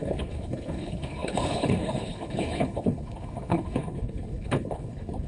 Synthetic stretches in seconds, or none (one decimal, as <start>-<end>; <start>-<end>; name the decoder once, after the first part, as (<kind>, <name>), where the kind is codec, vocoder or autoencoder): 0.0-5.3 (codec, HILCodec)